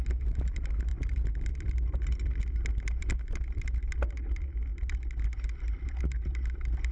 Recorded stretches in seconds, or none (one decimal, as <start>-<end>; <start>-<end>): 0.0-6.9